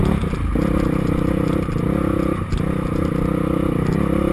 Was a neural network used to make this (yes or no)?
no